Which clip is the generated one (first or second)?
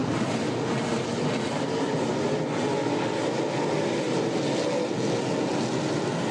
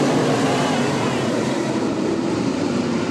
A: second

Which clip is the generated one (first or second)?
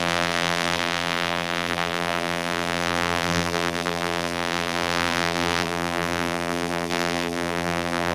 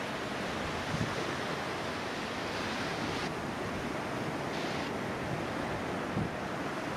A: first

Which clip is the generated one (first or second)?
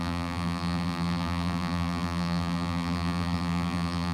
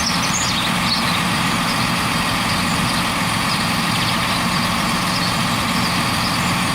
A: first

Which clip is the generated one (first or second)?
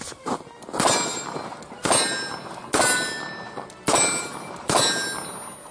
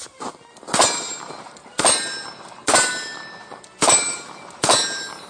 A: second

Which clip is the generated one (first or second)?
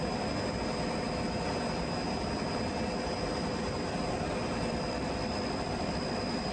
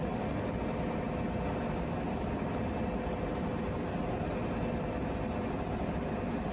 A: first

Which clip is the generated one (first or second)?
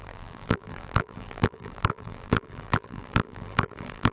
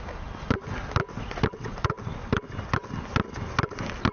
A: first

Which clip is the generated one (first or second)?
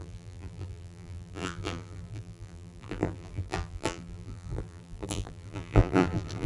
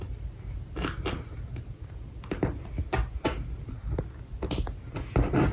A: first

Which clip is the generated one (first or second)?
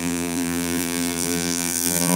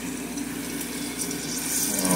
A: first